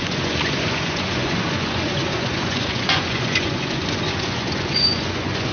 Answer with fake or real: fake